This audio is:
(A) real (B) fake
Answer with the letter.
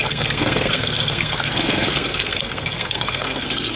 B